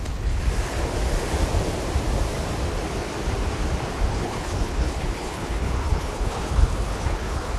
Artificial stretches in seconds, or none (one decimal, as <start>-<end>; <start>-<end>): 0.0-0.4; 4.1-7.6